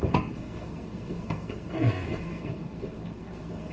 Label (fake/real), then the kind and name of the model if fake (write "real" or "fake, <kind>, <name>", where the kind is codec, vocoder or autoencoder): fake, codec, SNAC